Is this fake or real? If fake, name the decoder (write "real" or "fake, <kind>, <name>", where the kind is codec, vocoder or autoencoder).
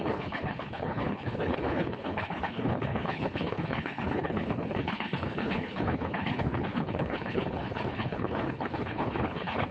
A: fake, codec, HILCodec